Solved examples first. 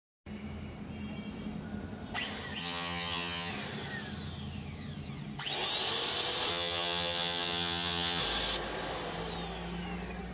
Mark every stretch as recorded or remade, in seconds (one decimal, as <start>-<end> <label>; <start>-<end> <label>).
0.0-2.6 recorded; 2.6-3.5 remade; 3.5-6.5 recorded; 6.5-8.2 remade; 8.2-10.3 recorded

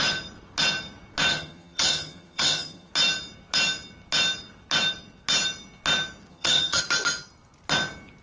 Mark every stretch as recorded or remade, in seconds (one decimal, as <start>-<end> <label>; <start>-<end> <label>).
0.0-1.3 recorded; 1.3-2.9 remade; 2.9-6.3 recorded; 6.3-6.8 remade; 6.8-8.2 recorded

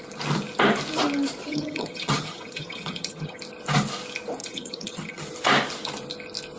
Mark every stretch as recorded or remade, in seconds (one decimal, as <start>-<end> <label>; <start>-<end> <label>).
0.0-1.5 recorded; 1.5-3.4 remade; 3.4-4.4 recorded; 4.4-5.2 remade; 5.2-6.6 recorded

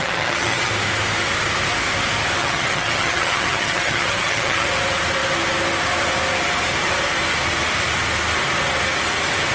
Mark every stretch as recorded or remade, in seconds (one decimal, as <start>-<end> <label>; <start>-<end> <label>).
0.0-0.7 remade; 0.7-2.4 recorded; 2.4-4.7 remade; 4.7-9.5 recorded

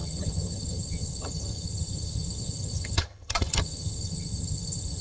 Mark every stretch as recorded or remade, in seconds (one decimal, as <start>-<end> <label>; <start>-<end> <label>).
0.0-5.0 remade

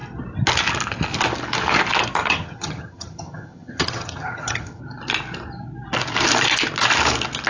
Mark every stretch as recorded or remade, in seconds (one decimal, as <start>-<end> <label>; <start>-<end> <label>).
0.0-2.2 recorded; 2.2-4.8 remade; 4.8-7.5 recorded